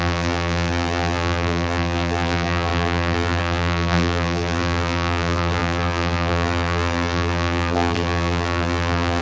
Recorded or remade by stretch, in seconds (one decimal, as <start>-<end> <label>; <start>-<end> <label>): 0.0-9.2 remade